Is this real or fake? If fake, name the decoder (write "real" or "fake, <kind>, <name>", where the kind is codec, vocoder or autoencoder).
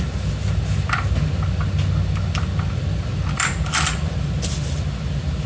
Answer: real